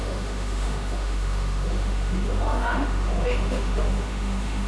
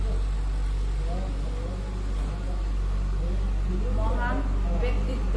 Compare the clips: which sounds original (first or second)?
second